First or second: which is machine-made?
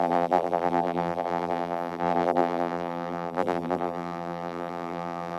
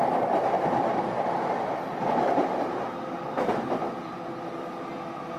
first